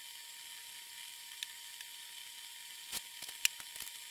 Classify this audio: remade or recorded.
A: recorded